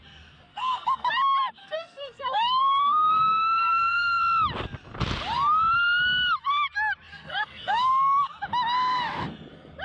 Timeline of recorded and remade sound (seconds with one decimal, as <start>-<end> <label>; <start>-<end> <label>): 0.0-0.5 recorded; 0.5-1.1 remade; 1.1-1.6 recorded; 1.6-4.2 remade; 4.2-7.1 recorded; 7.1-7.9 remade; 7.9-9.8 recorded